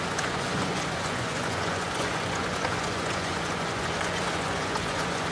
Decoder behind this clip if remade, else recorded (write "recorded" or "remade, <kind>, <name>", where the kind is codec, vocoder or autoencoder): remade, vocoder, Vocos